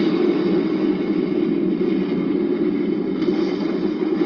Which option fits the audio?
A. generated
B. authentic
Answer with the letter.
B